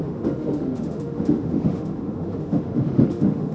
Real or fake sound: fake